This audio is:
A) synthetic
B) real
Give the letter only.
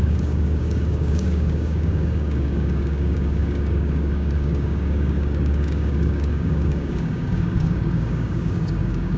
A